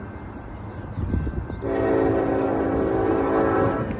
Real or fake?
real